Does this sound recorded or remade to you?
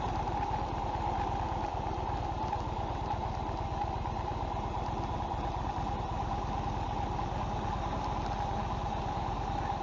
recorded